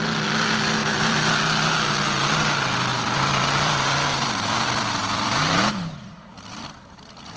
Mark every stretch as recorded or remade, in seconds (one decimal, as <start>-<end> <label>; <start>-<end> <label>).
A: 0.0-0.8 recorded; 0.8-1.4 remade; 1.4-2.9 recorded; 2.9-7.4 remade